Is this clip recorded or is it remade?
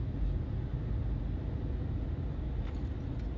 recorded